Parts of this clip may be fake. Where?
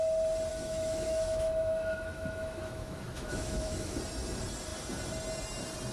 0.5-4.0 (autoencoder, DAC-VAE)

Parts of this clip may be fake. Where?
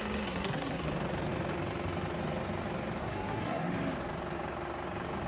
0.0-0.9 (codec, SNAC); 3.0-3.7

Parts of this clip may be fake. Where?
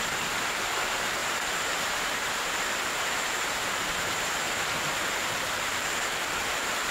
1.2-5.3 (vocoder, BigVGAN v2)